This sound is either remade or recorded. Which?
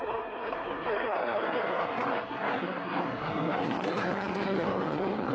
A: remade